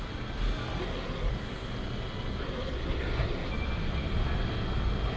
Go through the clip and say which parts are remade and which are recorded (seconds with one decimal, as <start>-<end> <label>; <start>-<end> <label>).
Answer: 0.0-0.8 recorded; 0.8-1.3 remade; 1.3-2.4 recorded; 2.4-3.5 remade; 3.5-5.2 recorded